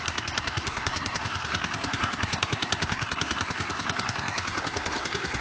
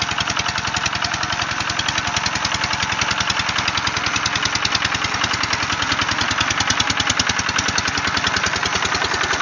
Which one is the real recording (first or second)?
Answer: second